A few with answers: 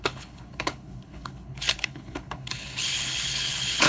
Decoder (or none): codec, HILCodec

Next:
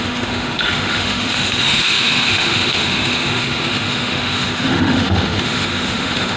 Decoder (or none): autoencoder, DAC-VAE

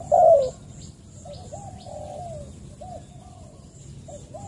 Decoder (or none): none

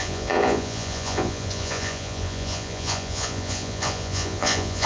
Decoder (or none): vocoder, Vocos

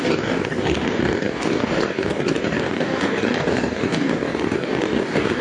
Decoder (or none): codec, DAC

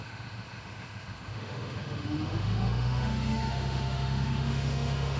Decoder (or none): autoencoder, DAC-VAE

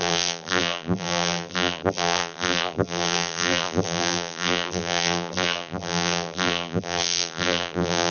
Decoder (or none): vocoder, BigVGAN v2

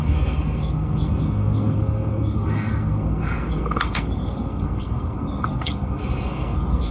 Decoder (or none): codec, SNAC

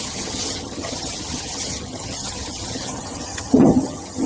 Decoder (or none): vocoder, HiFi-GAN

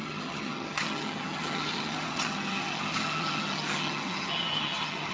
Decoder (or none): vocoder, HiFi-GAN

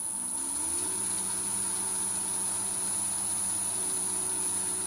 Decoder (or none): none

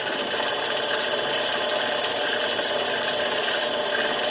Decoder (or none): none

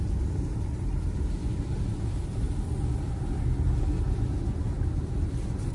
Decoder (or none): none